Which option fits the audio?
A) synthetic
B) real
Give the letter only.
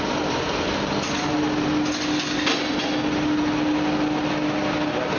B